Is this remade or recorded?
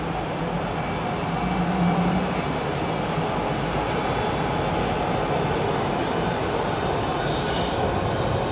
recorded